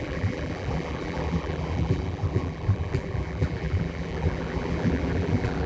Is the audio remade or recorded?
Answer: remade